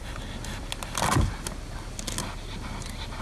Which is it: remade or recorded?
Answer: recorded